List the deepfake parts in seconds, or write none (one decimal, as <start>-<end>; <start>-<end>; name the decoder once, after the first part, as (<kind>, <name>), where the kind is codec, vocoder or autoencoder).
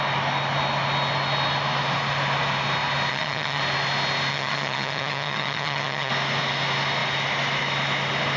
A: 3.1-3.6 (vocoder, HiFi-GAN); 4.3-6.1